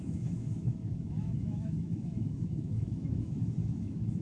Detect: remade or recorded remade